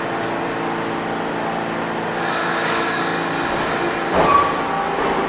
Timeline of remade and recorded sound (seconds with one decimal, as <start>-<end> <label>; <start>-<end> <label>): 0.0-2.4 recorded; 2.4-3.0 remade; 3.0-5.3 recorded